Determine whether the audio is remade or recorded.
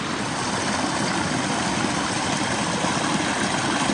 recorded